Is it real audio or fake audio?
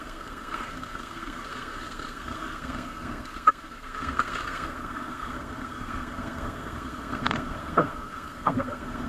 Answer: fake